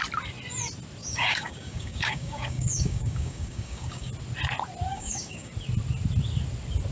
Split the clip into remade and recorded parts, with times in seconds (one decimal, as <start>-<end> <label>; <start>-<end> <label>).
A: 0.0-1.0 recorded; 1.0-4.1 remade; 4.1-4.9 recorded; 4.9-5.5 remade; 5.5-6.9 recorded